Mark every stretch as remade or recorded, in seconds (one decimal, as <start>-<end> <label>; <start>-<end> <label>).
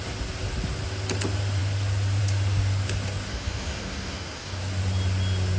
0.0-3.3 recorded; 3.3-4.6 remade; 4.6-5.6 recorded